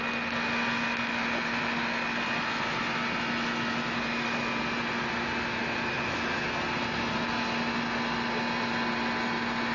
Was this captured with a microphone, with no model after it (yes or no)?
yes